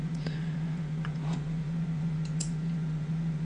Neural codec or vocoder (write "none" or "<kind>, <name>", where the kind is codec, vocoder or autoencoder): vocoder, Vocos